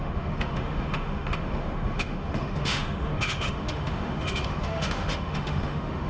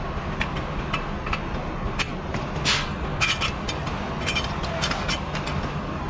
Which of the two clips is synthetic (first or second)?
first